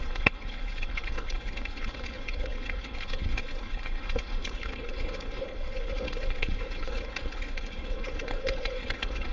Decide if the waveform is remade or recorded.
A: remade